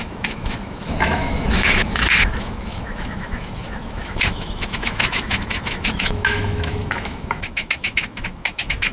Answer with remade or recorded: remade